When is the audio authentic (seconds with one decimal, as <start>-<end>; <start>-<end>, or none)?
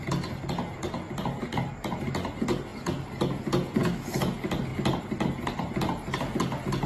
0.0-3.8; 4.3-6.9